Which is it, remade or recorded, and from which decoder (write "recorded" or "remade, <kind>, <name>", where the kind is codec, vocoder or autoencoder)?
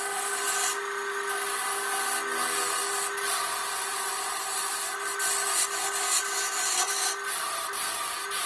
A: recorded